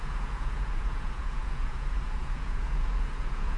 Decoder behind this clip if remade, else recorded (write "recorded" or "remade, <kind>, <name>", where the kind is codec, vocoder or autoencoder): remade, vocoder, Vocos